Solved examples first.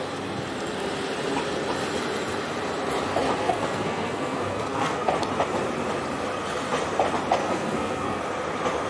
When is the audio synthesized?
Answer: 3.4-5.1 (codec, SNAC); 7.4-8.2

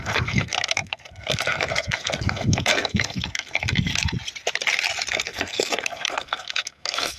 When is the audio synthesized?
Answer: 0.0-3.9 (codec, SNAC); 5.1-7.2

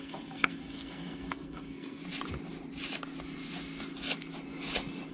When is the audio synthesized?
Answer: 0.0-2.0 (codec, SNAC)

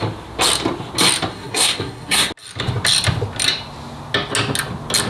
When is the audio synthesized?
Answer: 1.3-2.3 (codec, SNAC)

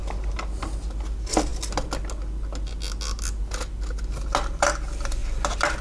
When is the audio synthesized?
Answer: none

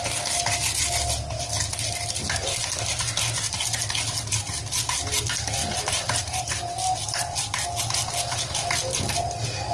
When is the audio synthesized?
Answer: none

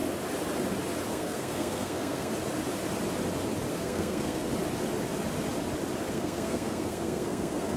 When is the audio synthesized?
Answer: 1.1-2.3 (codec, SNAC); 3.7-4.5; 6.1-7.8

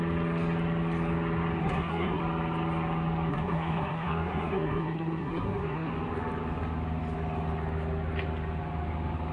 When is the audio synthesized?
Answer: 1.6-2.2 (codec, SNAC); 3.3-5.9